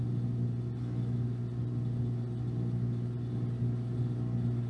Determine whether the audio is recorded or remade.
recorded